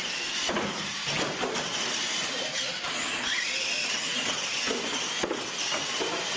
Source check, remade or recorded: recorded